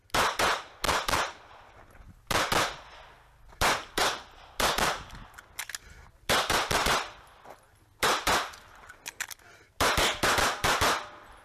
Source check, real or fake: real